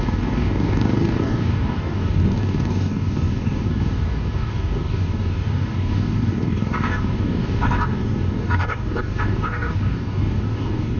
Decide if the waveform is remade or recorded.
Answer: remade